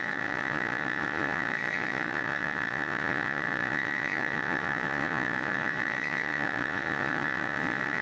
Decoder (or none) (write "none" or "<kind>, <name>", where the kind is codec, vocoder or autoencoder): vocoder, Vocos